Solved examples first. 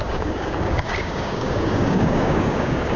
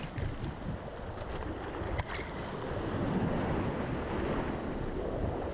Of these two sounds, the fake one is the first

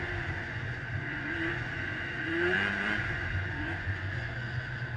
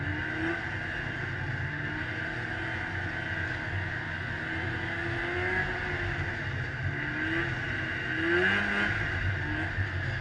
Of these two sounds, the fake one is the first